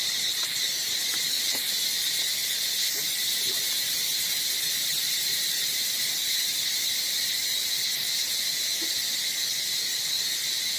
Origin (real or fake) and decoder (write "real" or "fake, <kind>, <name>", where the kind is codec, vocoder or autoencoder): real